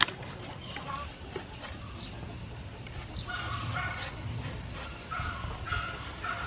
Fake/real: real